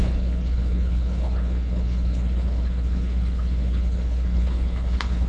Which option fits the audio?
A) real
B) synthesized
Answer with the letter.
B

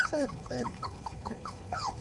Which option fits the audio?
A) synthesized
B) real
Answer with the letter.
A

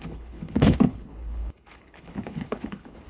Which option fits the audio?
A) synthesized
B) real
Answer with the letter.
A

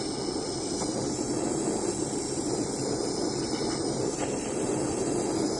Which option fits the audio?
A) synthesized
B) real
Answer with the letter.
B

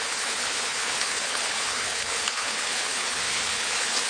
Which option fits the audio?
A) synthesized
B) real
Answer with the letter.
A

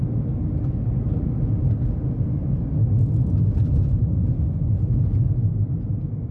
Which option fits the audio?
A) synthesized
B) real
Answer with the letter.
B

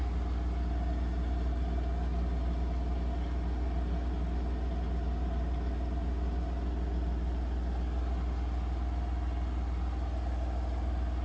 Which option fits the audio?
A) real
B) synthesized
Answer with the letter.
A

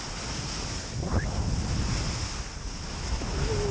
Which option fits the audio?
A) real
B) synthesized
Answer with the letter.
A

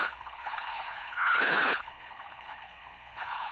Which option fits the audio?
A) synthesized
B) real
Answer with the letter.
A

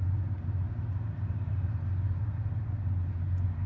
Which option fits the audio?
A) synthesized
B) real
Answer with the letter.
B